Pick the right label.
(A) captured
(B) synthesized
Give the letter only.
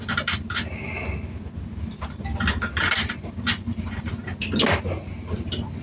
A